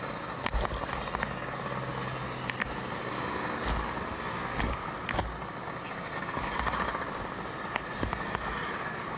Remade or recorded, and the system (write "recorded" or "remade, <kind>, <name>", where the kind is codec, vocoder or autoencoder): recorded